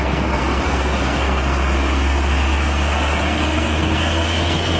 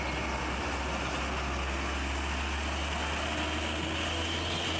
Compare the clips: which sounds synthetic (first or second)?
first